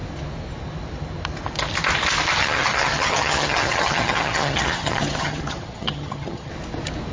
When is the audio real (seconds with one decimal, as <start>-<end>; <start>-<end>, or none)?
0.0-2.4; 6.5-7.1